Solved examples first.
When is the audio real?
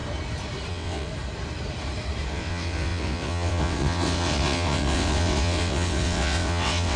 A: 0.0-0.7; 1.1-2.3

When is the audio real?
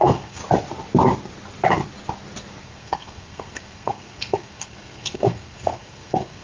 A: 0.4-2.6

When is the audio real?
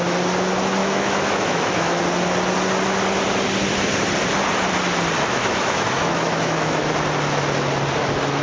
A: 0.0-0.8; 2.0-5.3; 6.8-8.4